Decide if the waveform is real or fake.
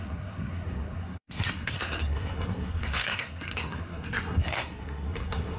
fake